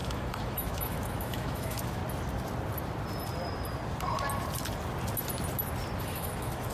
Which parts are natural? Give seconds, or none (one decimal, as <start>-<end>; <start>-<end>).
2.0-6.0